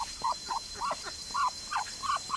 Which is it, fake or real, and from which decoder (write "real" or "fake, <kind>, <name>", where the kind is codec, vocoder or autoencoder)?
real